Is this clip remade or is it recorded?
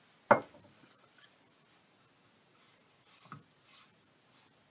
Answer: recorded